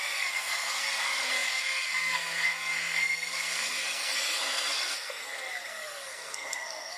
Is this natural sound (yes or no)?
no